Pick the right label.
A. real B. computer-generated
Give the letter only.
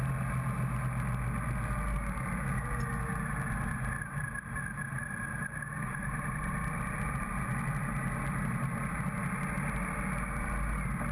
A